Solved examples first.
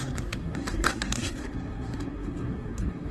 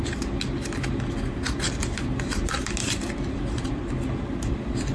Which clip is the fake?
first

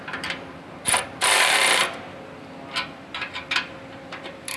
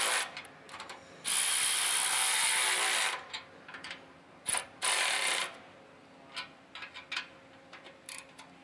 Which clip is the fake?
first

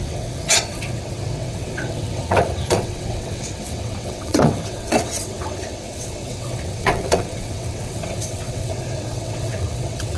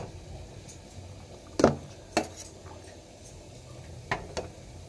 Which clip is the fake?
first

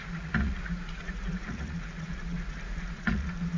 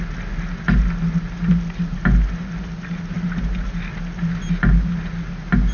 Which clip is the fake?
first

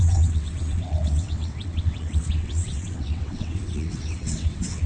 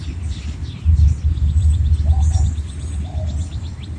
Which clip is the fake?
first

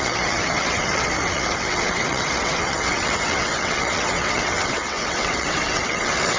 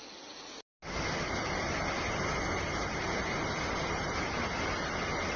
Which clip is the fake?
first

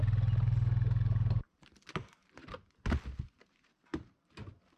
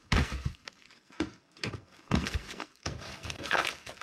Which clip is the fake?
second